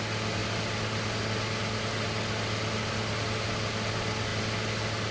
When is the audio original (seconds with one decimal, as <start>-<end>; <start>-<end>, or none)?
0.0-5.1